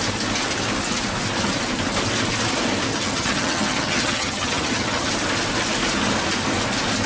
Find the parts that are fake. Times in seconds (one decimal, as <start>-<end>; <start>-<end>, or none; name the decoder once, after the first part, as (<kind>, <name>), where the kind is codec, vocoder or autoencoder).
2.9-5.1 (vocoder, HiFi-GAN)